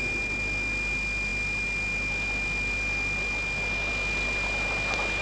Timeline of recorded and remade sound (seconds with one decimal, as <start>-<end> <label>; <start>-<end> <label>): 0.0-5.2 recorded